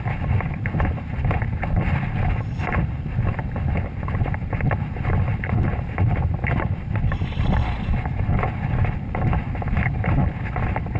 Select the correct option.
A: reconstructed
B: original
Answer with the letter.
B